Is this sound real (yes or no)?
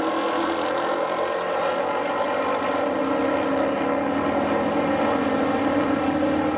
yes